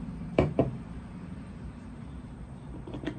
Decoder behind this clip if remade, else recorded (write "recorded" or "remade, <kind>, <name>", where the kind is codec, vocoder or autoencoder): remade, vocoder, BigVGAN v2